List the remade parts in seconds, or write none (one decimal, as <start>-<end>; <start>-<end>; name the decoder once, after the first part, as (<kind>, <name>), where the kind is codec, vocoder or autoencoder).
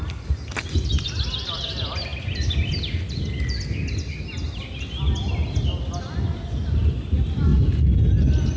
none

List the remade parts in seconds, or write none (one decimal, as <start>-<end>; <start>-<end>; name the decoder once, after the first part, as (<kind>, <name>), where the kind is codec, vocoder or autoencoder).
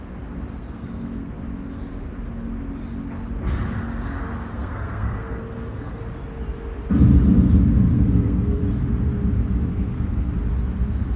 0.5-1.3 (codec, SNAC); 4.5-6.0; 7.9-8.6; 9.7-10.3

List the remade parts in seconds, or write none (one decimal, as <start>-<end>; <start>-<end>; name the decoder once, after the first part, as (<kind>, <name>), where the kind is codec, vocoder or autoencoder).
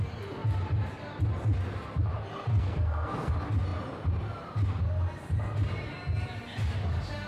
2.5-3.3 (codec, SNAC)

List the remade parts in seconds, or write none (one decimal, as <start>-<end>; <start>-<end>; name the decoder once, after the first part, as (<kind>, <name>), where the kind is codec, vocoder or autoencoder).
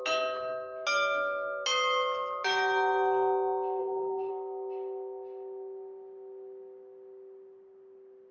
3.8-4.3 (codec, SNAC)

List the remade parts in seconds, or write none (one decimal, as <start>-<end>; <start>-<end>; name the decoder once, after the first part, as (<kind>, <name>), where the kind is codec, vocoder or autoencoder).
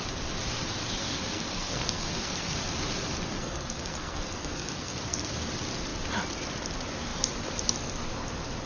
1.0-2.6 (codec, SNAC); 3.3-5.3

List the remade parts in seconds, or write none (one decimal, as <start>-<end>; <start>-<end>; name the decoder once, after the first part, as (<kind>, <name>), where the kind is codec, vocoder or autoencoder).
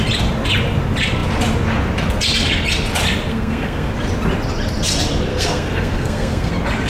3.3-3.9 (codec, SNAC); 5.3-6.5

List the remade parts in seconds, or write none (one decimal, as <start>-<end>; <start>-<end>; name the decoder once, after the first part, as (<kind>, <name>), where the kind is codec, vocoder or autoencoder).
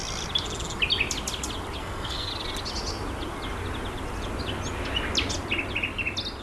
1.8-2.3 (codec, SNAC)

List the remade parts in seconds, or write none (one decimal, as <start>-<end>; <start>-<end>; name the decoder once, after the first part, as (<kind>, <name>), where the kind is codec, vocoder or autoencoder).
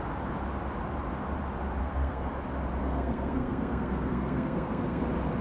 1.8-2.3 (codec, SNAC); 2.8-5.0